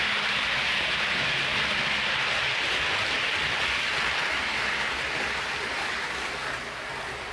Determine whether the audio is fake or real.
real